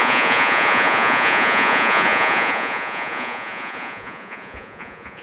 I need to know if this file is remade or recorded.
remade